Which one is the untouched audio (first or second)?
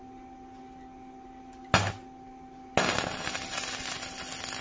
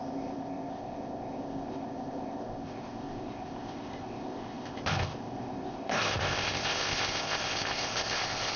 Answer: first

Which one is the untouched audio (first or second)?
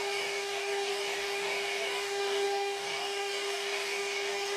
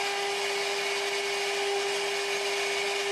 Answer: second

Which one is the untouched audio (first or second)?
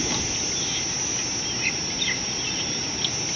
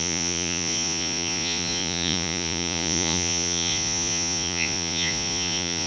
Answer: first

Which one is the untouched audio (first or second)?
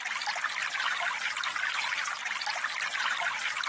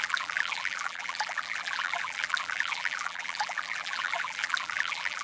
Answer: first